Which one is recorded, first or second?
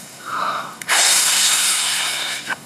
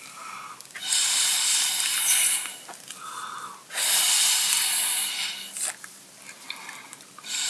second